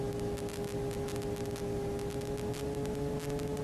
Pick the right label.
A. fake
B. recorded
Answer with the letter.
B